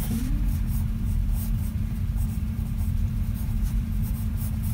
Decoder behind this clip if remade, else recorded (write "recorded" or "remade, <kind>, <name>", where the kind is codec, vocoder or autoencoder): remade, vocoder, BigVGAN v2